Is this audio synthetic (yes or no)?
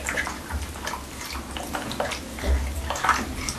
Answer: no